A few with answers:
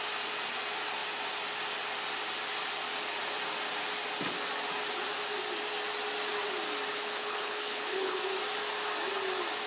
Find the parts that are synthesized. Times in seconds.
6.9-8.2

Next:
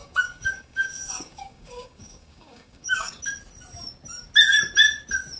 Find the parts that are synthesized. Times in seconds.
0.0-3.2

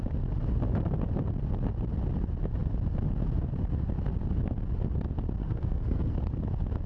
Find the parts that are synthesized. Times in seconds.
5.4-6.2

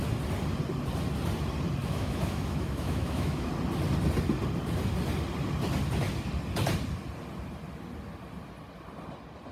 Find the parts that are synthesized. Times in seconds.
1.8-3.5

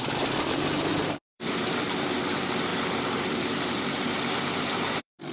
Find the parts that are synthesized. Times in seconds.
0.0-5.3

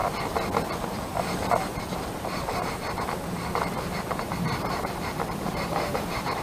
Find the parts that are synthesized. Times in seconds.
0.7-6.4